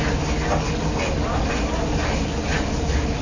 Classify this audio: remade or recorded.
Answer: recorded